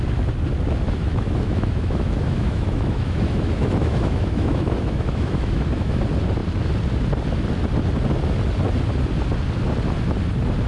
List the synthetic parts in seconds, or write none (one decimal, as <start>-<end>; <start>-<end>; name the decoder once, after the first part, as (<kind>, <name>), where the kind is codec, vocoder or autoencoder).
1.0-6.0 (autoencoder, DAC-VAE)